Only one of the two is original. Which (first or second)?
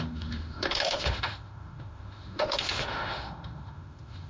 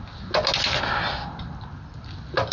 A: second